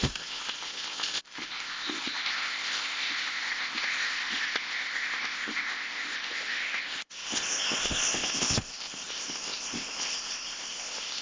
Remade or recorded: remade